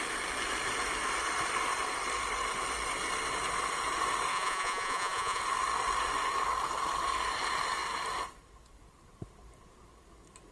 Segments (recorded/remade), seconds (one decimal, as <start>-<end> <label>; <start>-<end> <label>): 0.0-4.3 recorded; 4.3-5.4 remade; 5.4-10.5 recorded